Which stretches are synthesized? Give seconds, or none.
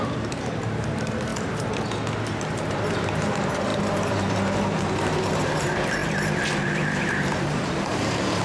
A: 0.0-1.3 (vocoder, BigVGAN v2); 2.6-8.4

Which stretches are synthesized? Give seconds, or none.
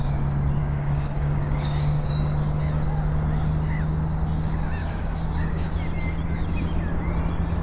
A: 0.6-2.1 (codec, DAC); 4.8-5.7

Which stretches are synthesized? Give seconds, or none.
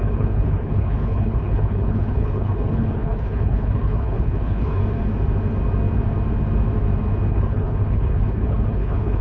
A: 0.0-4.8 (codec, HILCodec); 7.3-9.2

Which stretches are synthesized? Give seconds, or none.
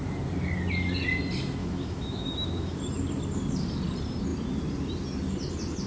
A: 1.6-2.8 (autoencoder, DAC-VAE)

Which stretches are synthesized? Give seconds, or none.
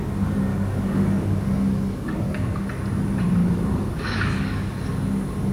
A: 0.5-2.7 (codec, DAC); 3.4-4.8